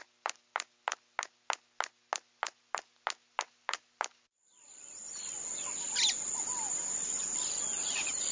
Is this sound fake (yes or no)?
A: no